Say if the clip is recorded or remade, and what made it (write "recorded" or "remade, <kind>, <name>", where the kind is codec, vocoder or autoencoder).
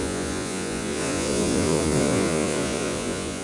remade, vocoder, Vocos